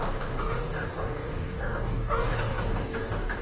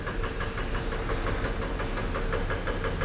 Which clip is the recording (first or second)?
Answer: second